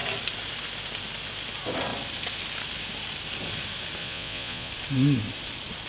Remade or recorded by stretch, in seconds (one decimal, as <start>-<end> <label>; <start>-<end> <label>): 0.0-4.0 recorded; 4.0-4.7 remade; 4.7-5.9 recorded